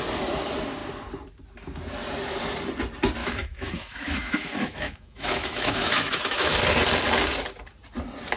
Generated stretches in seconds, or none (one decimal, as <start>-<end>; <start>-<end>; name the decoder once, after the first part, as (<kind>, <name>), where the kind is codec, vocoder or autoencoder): 3.2-6.6 (autoencoder, DAC-VAE)